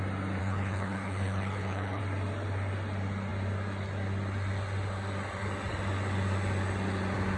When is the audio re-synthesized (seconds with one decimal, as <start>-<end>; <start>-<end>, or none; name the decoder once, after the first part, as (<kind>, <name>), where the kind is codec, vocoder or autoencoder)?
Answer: 0.4-2.0 (codec, HILCodec)